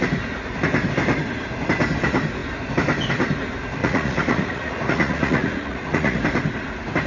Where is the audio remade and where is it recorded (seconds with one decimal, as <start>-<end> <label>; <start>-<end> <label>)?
0.0-3.8 recorded; 3.8-6.2 remade; 6.2-7.1 recorded